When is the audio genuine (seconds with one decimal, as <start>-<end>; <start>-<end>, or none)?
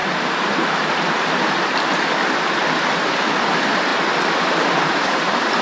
0.0-0.5